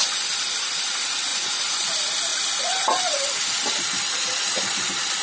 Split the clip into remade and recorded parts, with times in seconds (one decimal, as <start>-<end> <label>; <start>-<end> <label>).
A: 0.0-1.3 recorded; 1.3-1.9 remade; 1.9-5.2 recorded